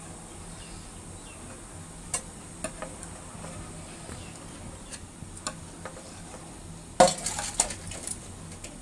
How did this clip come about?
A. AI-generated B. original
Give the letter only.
B